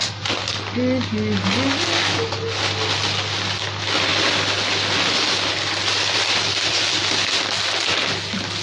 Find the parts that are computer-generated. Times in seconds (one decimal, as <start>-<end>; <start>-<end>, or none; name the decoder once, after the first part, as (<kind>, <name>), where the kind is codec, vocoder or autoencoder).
none